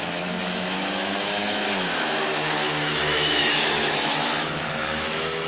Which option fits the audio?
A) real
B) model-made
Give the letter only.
B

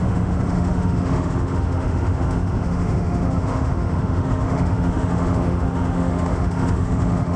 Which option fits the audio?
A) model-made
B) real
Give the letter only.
A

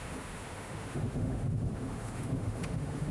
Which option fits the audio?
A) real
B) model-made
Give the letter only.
B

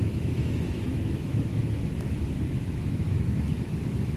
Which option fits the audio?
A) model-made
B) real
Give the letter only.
A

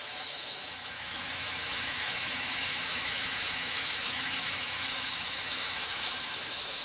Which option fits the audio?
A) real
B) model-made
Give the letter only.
B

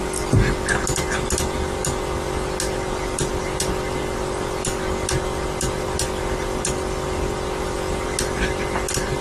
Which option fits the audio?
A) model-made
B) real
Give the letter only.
B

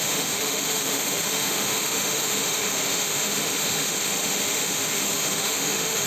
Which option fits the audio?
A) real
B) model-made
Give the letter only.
B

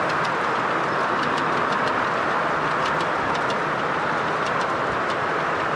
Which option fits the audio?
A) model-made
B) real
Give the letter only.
B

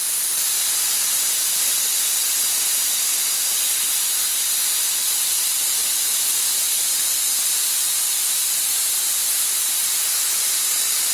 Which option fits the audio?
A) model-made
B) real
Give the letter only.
B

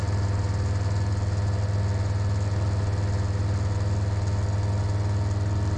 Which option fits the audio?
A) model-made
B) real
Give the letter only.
B